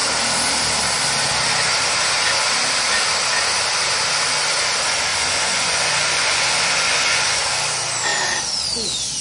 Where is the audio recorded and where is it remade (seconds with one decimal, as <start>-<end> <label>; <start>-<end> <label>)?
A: 0.0-5.1 recorded; 5.1-7.4 remade; 7.4-9.2 recorded